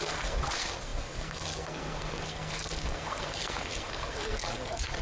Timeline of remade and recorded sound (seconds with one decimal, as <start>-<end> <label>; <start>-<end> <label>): 0.0-5.0 remade